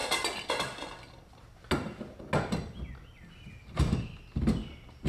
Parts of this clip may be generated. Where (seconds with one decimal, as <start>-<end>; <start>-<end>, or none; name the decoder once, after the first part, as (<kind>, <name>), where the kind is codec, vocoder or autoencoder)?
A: none